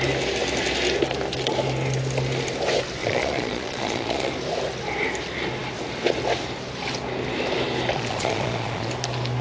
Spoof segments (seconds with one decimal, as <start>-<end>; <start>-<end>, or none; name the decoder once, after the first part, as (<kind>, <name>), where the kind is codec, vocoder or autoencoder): 3.0-4.3 (vocoder, Vocos); 7.9-8.9